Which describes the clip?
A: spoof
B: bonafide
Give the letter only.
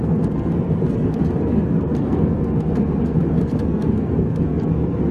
A